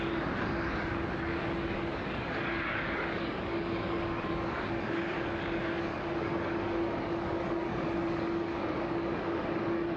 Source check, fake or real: fake